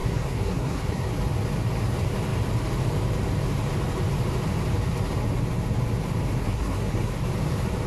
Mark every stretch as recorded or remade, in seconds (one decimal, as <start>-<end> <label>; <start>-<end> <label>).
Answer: 0.0-1.1 remade; 1.1-6.4 recorded; 6.4-7.1 remade; 7.1-7.9 recorded